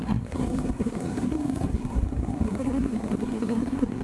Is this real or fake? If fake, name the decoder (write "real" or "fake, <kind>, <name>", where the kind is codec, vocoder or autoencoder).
fake, codec, SNAC